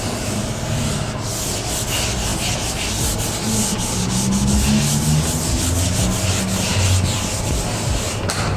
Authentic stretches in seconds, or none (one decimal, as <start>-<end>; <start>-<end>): 0.0-8.6